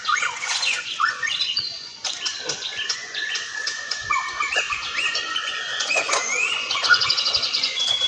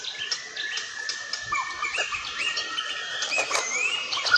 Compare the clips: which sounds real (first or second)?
second